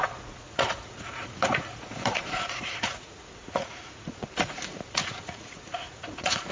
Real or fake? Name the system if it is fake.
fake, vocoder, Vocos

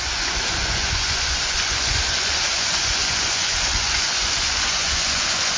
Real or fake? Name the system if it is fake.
fake, vocoder, Vocos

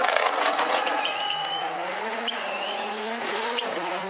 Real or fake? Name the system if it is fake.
fake, vocoder, Vocos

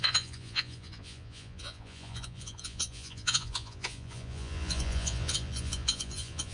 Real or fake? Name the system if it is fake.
fake, vocoder, Vocos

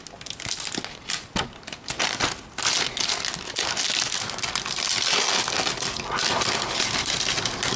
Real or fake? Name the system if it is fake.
real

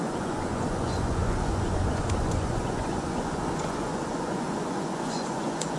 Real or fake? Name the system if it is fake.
fake, vocoder, Vocos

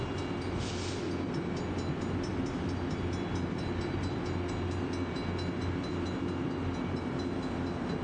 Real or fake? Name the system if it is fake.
real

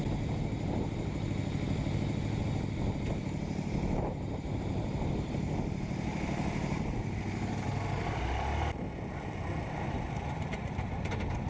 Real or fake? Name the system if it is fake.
real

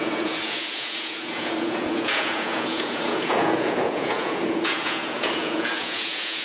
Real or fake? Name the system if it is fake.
fake, vocoder, Vocos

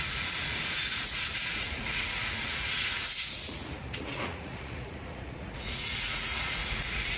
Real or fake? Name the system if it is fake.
fake, vocoder, Vocos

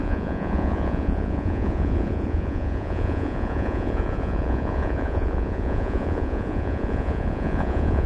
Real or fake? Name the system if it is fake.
fake, vocoder, Vocos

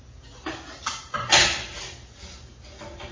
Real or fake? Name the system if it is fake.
real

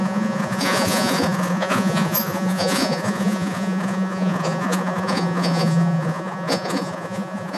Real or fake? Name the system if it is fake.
fake, vocoder, Vocos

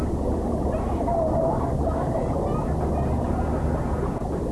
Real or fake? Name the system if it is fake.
real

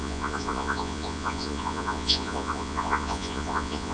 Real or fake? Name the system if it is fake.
fake, vocoder, Vocos